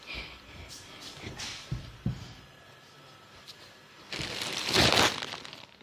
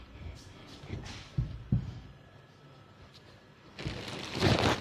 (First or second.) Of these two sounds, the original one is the first